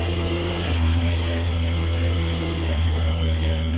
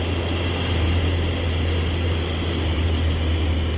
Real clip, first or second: second